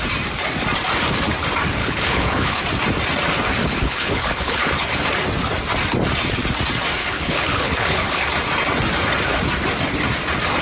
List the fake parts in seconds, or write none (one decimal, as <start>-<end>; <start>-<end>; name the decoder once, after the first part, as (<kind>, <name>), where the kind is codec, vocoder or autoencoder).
1.8-2.6 (codec, HILCodec); 3.6-4.7; 7.0-8.2